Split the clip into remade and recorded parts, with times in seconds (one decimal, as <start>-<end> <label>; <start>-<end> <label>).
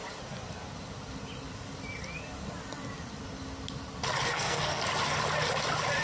0.0-4.3 recorded; 4.3-4.8 remade; 4.8-6.0 recorded